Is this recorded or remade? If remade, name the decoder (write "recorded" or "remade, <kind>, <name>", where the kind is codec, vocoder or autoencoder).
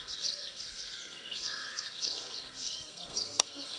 remade, codec, SNAC